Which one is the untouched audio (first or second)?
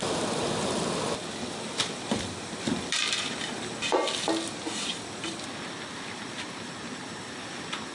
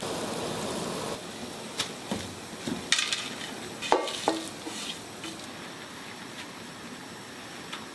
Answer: second